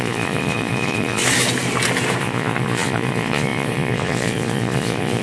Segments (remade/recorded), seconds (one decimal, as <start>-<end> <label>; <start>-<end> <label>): 0.0-1.2 remade; 1.2-2.2 recorded; 2.2-5.2 remade